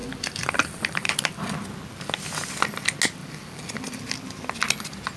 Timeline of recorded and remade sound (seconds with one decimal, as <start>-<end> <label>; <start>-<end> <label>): 0.0-1.5 remade; 1.5-3.2 recorded; 3.2-4.0 remade; 4.0-5.2 recorded